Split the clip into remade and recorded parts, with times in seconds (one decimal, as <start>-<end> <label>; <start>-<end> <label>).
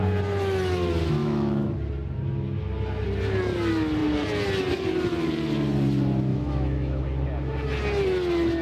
0.0-1.2 recorded; 1.2-1.7 remade; 1.7-6.3 recorded; 6.3-7.0 remade; 7.0-8.6 recorded